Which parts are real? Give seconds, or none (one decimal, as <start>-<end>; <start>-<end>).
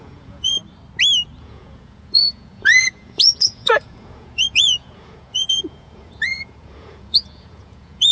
0.6-1.4